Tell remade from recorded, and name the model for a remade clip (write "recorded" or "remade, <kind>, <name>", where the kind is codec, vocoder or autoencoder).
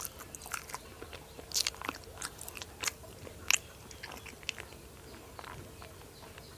recorded